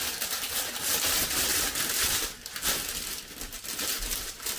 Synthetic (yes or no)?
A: no